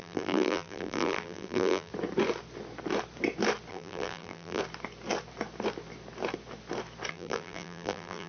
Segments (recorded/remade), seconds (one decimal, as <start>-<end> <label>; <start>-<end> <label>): 0.0-1.9 remade; 1.9-3.7 recorded; 3.7-4.6 remade; 4.6-7.1 recorded; 7.1-8.3 remade